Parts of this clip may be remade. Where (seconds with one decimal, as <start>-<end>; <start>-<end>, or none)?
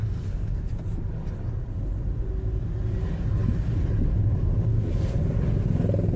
0.0-0.7; 4.7-5.2